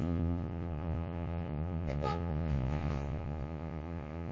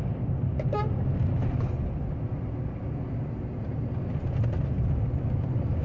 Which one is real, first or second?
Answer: second